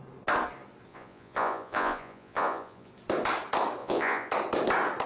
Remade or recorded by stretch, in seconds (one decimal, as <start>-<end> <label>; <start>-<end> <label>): 0.0-0.9 recorded; 0.9-2.9 remade; 2.9-3.8 recorded; 3.8-4.3 remade; 4.3-5.1 recorded